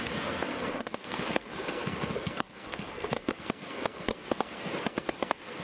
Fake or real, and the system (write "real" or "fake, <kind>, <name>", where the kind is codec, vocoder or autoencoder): fake, codec, SNAC